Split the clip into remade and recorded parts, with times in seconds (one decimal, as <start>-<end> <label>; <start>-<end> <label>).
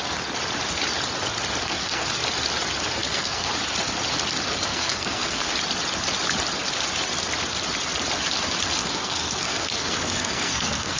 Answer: 0.0-1.6 recorded; 1.6-2.1 remade; 2.1-3.0 recorded; 3.0-3.5 remade; 3.5-4.7 recorded; 4.7-5.5 remade; 5.5-8.8 recorded; 8.8-11.0 remade